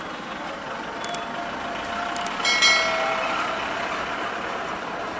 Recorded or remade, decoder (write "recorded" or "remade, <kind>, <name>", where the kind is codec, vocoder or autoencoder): recorded